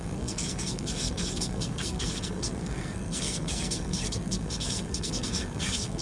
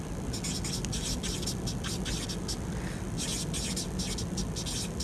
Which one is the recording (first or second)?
second